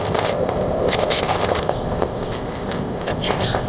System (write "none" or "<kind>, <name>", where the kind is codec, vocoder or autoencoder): codec, ZipCodec